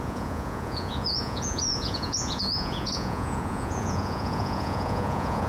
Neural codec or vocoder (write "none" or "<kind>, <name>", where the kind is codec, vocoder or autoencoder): vocoder, Vocos